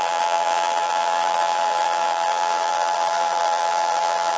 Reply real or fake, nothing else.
fake